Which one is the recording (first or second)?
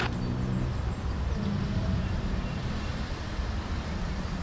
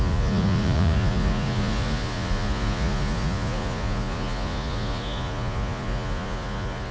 first